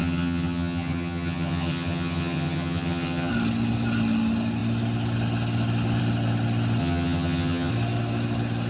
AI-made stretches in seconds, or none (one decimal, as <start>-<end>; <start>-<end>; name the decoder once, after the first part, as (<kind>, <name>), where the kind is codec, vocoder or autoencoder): 0.0-3.3 (vocoder, HiFi-GAN); 6.8-7.7